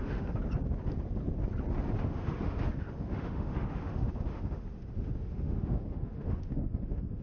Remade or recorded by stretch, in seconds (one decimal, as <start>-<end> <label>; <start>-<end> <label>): 0.0-0.4 remade; 0.4-2.0 recorded; 2.0-7.2 remade